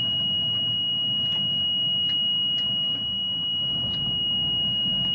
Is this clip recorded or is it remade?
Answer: recorded